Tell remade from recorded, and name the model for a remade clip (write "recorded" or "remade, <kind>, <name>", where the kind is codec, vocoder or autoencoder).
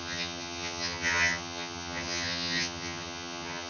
remade, vocoder, HiFi-GAN